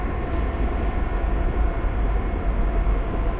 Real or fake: real